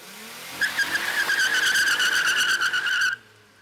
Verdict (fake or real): real